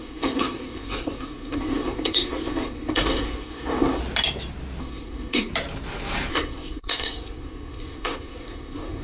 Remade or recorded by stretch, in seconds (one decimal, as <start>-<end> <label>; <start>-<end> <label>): 0.0-4.0 remade; 4.0-4.8 recorded; 4.8-5.5 remade; 5.5-6.3 recorded; 6.3-9.0 remade